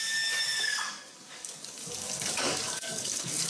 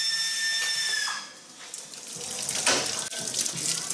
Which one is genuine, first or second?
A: second